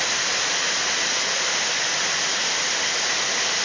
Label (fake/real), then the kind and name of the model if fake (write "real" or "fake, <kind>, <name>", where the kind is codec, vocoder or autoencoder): real